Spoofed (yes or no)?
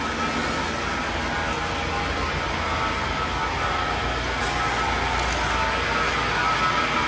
no